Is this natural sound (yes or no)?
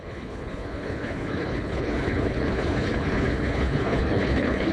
no